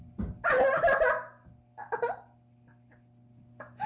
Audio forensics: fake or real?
real